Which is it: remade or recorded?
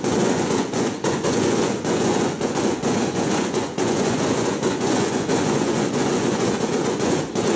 remade